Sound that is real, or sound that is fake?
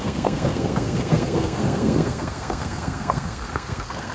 fake